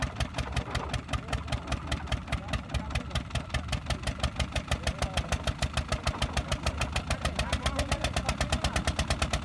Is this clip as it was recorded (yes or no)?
yes